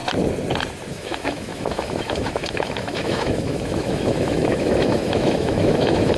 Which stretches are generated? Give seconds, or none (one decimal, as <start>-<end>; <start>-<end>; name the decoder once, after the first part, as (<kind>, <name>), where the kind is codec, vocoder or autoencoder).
0.9-6.2 (autoencoder, DAC-VAE)